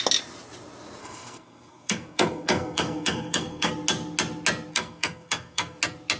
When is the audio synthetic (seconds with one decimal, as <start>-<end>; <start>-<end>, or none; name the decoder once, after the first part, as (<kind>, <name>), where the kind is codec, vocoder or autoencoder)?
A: 1.0-3.7 (codec, SNAC); 4.7-5.8